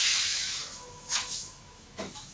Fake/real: fake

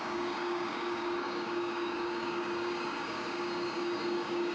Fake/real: fake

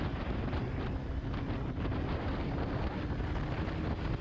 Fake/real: real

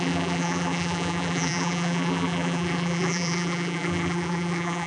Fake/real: fake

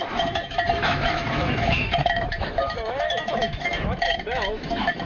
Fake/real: fake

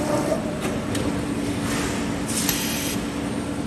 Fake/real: real